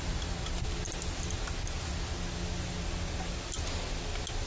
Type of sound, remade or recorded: recorded